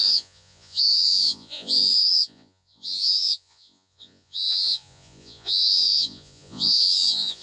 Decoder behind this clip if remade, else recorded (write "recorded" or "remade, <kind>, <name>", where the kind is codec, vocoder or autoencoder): remade, vocoder, Vocos